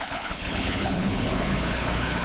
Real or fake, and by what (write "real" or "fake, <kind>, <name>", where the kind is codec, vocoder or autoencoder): fake, codec, HILCodec